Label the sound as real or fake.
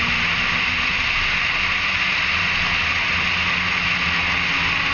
real